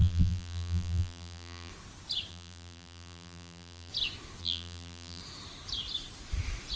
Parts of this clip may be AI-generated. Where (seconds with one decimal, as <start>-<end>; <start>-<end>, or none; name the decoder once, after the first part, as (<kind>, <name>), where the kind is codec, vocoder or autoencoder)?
0.0-1.7 (vocoder, BigVGAN v2); 2.3-3.9; 4.4-5.2